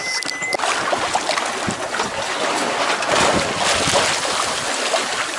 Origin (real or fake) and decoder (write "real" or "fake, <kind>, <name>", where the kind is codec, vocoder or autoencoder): real